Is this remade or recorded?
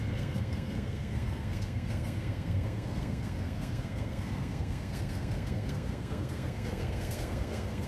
remade